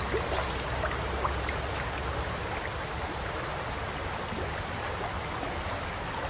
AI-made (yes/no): no